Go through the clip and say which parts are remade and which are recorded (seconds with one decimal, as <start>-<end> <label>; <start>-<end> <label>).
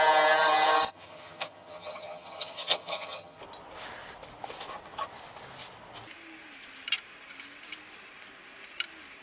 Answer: 0.0-0.9 recorded; 0.9-3.4 remade; 3.4-9.2 recorded